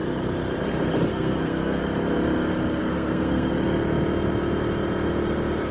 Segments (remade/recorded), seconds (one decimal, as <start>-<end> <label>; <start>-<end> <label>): 0.0-1.1 recorded; 1.1-1.8 remade; 1.8-2.8 recorded; 2.8-3.5 remade; 3.5-5.7 recorded